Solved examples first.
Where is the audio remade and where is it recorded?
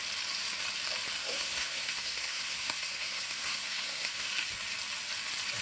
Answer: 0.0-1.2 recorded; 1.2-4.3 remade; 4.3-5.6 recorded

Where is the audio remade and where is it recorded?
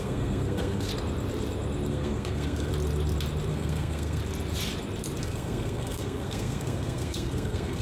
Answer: 0.0-0.9 remade; 0.9-1.9 recorded; 1.9-2.7 remade; 2.7-3.5 recorded; 3.5-4.2 remade; 4.2-5.2 recorded; 5.2-7.8 remade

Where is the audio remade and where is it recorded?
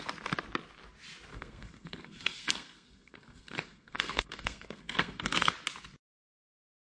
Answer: 0.0-1.3 recorded; 1.3-5.5 remade; 5.5-7.0 recorded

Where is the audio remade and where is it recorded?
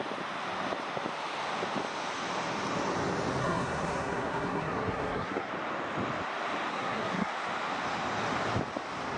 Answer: 0.0-3.4 recorded; 3.4-5.5 remade; 5.5-6.7 recorded; 6.7-7.3 remade; 7.3-9.2 recorded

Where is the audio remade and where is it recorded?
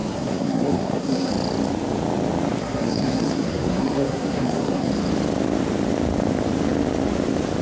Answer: 0.0-1.3 remade; 1.3-2.6 recorded; 2.6-4.9 remade; 4.9-7.6 recorded